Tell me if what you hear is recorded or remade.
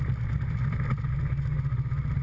recorded